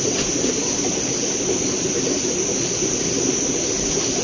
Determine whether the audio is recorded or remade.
recorded